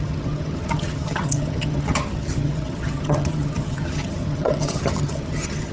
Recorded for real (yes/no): no